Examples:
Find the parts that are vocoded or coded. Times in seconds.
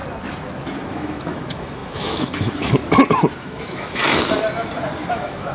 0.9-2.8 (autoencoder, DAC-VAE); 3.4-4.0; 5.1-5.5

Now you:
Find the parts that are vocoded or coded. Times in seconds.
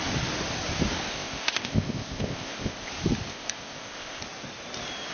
1.1-2.9 (codec, ZipCodec); 3.3-4.2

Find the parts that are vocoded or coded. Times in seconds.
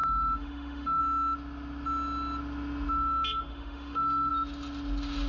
0.0-1.0 (autoencoder, DAC-VAE); 3.5-4.3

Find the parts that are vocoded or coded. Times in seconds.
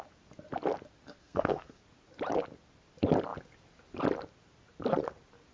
1.2-1.8 (codec, SNAC)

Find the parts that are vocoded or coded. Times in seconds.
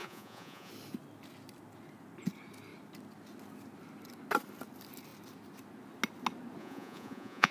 0.0-0.7 (vocoder, Vocos); 6.6-7.5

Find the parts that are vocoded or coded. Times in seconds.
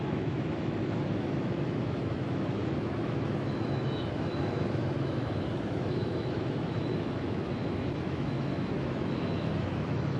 0.0-10.2 (autoencoder, DAC-VAE)